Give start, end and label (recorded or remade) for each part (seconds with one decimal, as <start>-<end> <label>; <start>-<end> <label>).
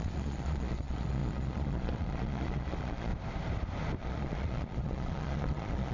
0.0-3.1 remade; 3.1-4.0 recorded; 4.0-5.9 remade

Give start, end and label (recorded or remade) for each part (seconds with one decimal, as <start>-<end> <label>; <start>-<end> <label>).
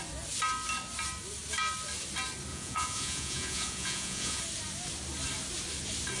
0.0-2.5 recorded; 2.5-4.4 remade; 4.4-6.2 recorded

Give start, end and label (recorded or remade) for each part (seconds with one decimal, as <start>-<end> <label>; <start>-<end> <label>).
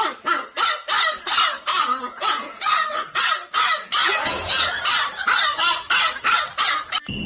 0.0-1.7 recorded; 1.7-3.2 remade; 3.2-4.0 recorded; 4.0-4.7 remade; 4.7-7.3 recorded